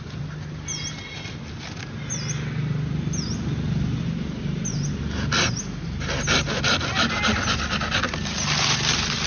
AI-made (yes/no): no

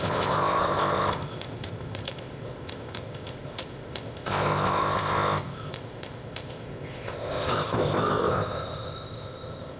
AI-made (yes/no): yes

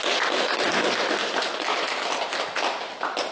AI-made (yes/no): no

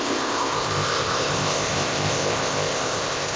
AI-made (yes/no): yes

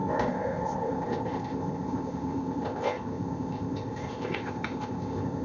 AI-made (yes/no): yes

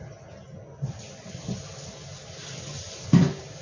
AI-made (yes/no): no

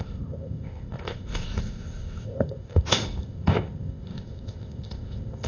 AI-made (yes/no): yes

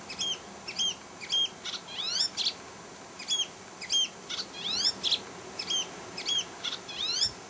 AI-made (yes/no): no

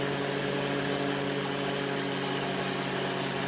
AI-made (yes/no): no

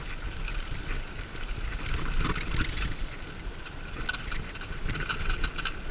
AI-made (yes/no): no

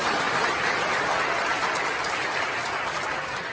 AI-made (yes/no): no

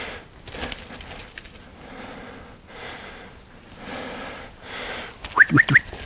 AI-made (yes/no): no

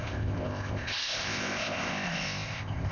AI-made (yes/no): yes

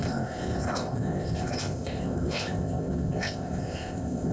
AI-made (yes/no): yes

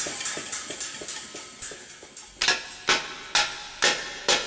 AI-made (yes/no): no